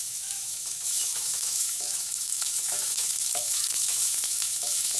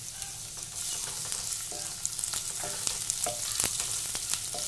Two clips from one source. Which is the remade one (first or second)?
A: first